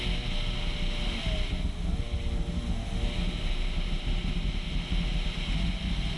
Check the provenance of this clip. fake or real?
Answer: real